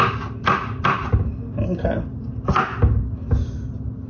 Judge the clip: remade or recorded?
recorded